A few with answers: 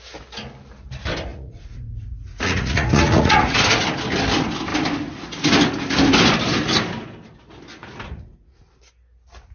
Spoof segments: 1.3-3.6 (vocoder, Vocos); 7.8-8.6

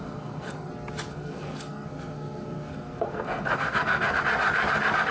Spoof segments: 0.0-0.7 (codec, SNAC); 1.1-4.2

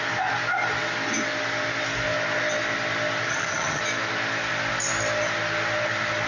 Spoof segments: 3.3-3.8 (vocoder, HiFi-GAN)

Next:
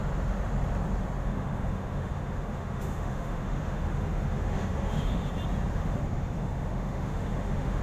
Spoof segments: 1.2-5.3 (autoencoder, DAC-VAE); 5.7-7.8

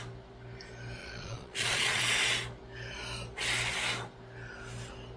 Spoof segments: 1.0-2.0 (vocoder, Vocos)

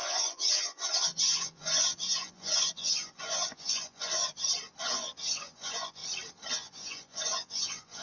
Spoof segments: 0.0-4.2 (vocoder, Vocos); 4.8-6.0; 6.5-8.0

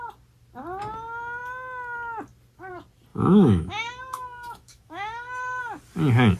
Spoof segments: 3.1-5.6 (autoencoder, DAC-VAE)

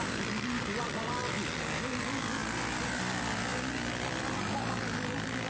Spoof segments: 2.4-2.9 (vocoder, BigVGAN v2)